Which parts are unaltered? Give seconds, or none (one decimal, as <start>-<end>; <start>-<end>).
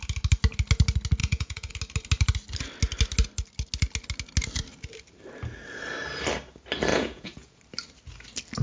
0.0-1.2; 1.7-6.9; 7.6-8.6